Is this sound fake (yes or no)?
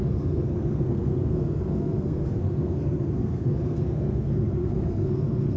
yes